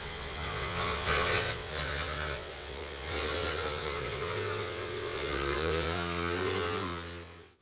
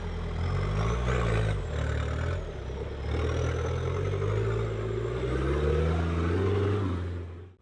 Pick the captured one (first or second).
second